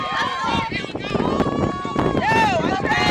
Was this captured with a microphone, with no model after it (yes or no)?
yes